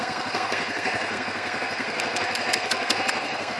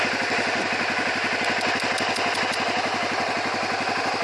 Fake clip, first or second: first